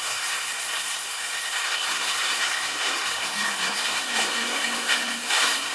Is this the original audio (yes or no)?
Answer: no